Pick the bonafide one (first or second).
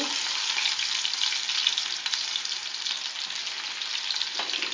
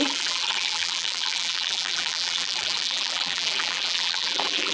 first